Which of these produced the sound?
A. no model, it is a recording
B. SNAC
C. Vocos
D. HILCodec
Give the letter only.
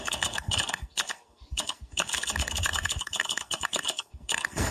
B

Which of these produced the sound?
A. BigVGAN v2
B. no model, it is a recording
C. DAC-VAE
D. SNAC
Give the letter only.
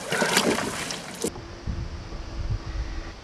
B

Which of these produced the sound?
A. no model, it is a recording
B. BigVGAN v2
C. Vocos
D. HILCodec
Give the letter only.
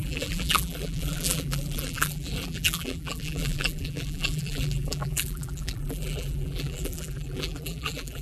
B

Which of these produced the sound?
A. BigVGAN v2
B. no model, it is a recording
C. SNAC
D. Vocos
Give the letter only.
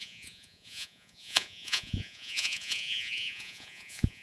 D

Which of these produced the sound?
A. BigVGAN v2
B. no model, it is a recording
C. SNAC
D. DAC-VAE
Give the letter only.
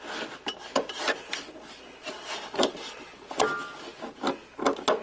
B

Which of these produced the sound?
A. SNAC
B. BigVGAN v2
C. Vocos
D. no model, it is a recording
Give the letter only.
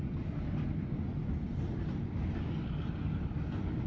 D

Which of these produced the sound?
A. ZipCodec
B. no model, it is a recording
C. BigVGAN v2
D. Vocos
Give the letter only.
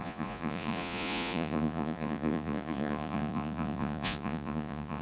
D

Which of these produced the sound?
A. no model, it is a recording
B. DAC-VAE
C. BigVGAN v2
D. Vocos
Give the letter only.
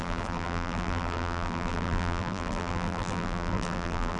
C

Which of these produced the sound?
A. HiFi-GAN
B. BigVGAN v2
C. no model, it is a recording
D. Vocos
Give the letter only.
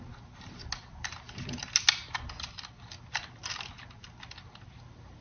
C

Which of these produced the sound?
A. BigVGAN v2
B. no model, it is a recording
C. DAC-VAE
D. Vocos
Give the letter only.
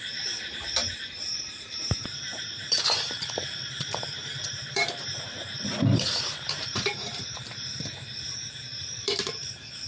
A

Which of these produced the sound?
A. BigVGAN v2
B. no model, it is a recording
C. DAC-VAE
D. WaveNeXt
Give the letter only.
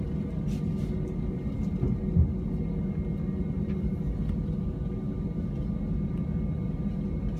B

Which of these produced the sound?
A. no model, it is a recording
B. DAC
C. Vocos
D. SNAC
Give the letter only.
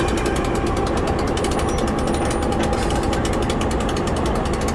A